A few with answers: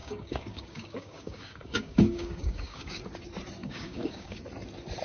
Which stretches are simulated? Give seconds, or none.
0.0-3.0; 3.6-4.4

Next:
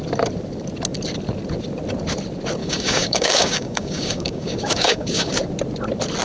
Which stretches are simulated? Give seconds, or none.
2.6-5.3

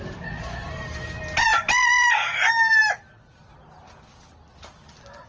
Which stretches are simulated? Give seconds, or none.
none

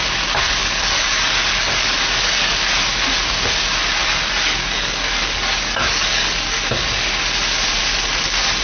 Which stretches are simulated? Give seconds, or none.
0.6-2.5; 4.0-7.2